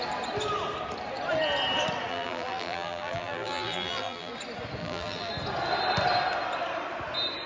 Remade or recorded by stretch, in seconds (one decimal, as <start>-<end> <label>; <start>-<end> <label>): 0.0-2.1 recorded; 2.1-4.3 remade; 4.3-4.8 recorded; 4.8-5.3 remade; 5.3-7.5 recorded